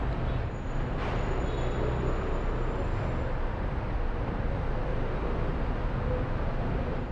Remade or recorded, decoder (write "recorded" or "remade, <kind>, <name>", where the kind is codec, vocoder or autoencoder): recorded